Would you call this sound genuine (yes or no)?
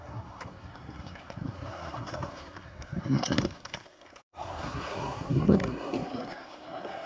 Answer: no